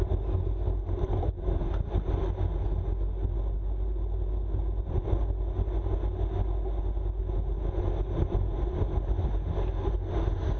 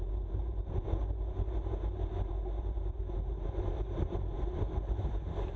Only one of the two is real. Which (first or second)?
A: first